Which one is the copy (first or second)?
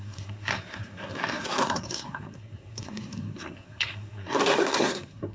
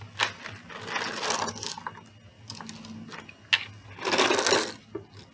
first